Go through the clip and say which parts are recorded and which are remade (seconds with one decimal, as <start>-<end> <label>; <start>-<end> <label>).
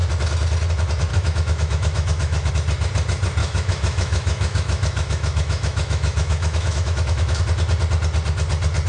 0.0-1.1 recorded; 1.1-2.5 remade; 2.5-3.4 recorded; 3.4-7.4 remade; 7.4-8.9 recorded